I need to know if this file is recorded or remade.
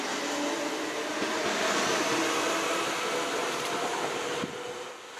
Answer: recorded